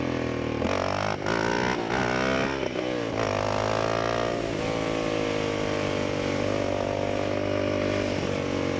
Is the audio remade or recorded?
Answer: recorded